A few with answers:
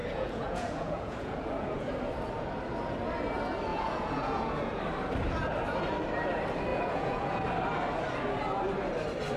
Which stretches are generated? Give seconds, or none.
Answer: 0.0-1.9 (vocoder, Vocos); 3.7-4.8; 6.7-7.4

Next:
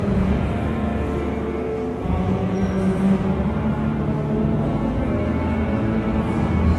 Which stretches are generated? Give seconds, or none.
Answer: 0.0-0.9 (vocoder, Vocos); 1.9-2.6

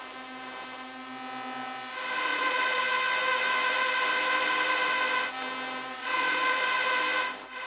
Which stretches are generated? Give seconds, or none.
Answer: 2.3-2.8 (vocoder, Vocos); 6.0-6.6

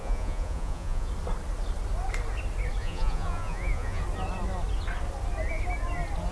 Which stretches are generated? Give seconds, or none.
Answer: 0.0-1.1 (vocoder, Vocos); 2.8-4.0

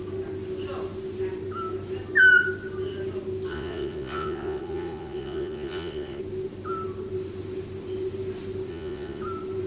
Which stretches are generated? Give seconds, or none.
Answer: 3.5-6.2 (vocoder, Vocos); 8.7-9.2

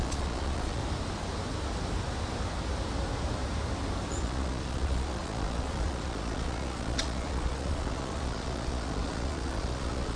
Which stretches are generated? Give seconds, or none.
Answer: 0.0-0.8 (vocoder, Vocos); 4.1-10.2

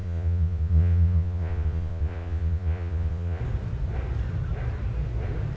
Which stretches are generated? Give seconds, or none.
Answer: 0.0-3.4 (vocoder, Vocos)